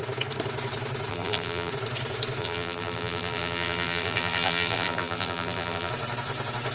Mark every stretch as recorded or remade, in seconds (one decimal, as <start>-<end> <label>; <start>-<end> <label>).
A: 0.0-1.1 recorded; 1.1-1.7 remade; 1.7-2.4 recorded; 2.4-5.9 remade; 5.9-6.7 recorded